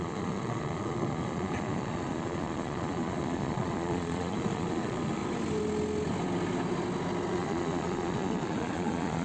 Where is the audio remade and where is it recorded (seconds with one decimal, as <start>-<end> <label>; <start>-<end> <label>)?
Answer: 0.0-5.2 remade; 5.2-7.3 recorded; 7.3-9.2 remade